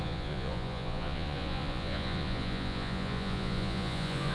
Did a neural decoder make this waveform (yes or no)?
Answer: yes